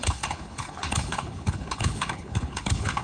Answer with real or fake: fake